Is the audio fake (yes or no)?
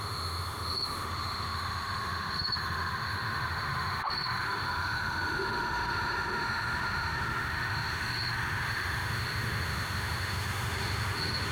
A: yes